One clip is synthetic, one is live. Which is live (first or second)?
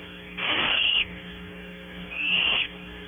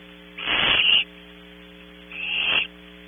second